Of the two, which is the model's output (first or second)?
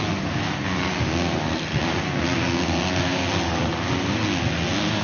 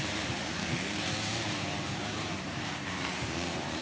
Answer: second